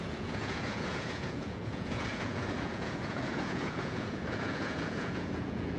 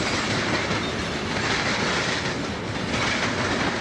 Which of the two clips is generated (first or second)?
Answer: first